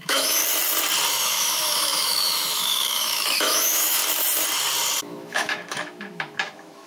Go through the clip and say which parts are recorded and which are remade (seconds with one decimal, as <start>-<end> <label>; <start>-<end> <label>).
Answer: 0.0-0.4 remade; 0.4-1.1 recorded; 1.1-4.0 remade; 4.0-5.0 recorded; 5.0-6.9 remade